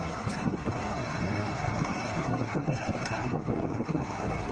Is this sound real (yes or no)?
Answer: no